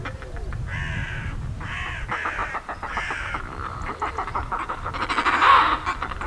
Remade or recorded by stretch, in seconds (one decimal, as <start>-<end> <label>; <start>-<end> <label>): 0.0-1.0 recorded; 1.0-2.0 remade; 2.0-2.4 recorded; 2.4-4.9 remade; 4.9-6.3 recorded

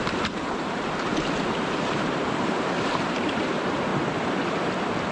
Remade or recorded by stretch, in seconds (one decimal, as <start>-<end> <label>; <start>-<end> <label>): 0.0-3.9 remade; 3.9-5.1 recorded

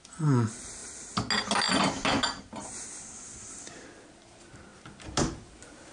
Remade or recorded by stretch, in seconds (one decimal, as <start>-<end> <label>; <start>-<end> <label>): 0.0-5.9 recorded

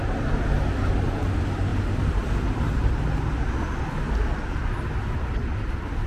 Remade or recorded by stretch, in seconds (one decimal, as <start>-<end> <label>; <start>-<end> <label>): 0.0-1.7 recorded; 1.7-2.6 remade; 2.6-6.1 recorded

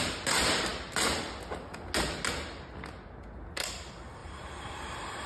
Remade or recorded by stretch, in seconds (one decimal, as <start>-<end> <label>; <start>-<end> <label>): 0.0-4.2 recorded; 4.2-5.3 remade

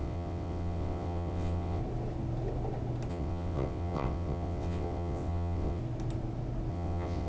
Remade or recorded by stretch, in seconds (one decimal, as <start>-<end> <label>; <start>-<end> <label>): 0.0-1.8 remade; 1.8-3.1 recorded; 3.1-5.8 remade; 5.8-6.7 recorded; 6.7-7.3 remade

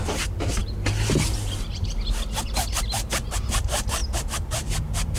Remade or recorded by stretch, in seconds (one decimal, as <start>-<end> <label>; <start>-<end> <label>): 0.0-0.6 remade; 0.6-3.0 recorded; 3.0-4.0 remade; 4.0-5.2 recorded